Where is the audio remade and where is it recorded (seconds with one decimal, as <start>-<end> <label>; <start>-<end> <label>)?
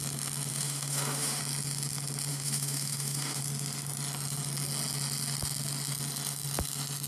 0.0-0.5 recorded; 0.5-1.4 remade; 1.4-2.3 recorded; 2.3-3.4 remade; 3.4-7.1 recorded